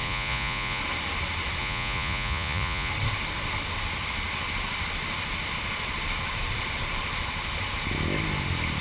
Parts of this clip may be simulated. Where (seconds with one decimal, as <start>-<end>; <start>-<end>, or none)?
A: 0.0-0.8; 1.6-2.9